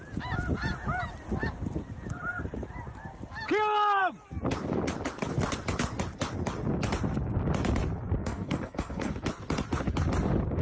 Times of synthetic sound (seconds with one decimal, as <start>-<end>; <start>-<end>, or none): 8.2-9.1